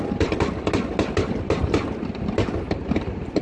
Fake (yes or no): no